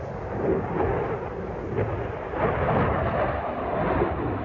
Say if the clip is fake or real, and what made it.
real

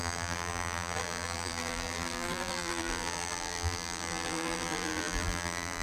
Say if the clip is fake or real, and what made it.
fake, vocoder, BigVGAN v2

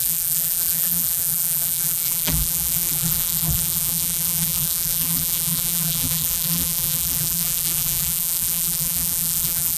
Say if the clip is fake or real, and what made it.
fake, vocoder, BigVGAN v2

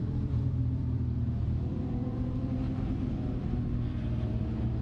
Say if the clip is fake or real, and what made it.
fake, vocoder, BigVGAN v2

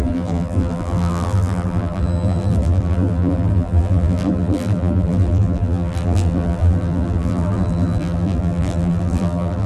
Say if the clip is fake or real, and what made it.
fake, vocoder, BigVGAN v2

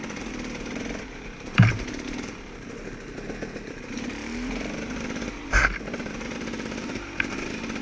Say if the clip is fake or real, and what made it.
fake, vocoder, BigVGAN v2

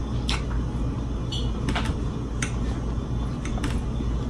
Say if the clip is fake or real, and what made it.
real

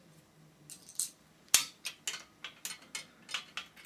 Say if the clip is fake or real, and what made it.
real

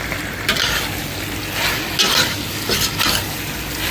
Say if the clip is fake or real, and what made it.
real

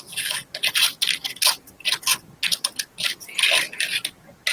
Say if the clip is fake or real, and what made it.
real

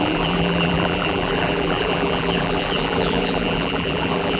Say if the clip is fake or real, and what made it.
fake, vocoder, BigVGAN v2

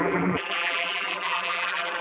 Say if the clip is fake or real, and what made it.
fake, vocoder, BigVGAN v2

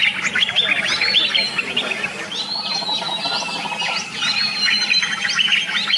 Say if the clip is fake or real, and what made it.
real